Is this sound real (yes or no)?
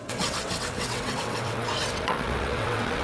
no